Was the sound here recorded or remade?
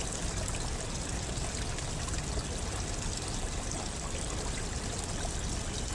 recorded